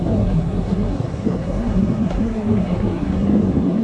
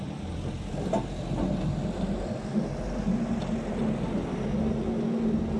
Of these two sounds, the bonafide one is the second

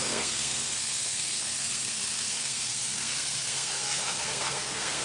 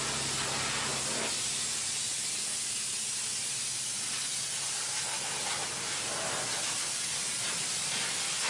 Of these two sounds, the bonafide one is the second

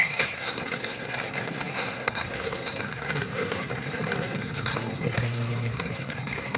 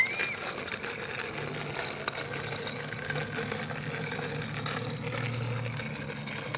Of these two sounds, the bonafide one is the second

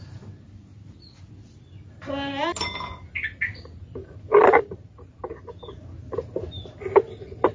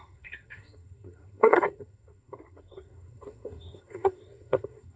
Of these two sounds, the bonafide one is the first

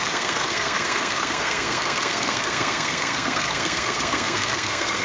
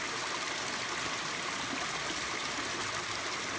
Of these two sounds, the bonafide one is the second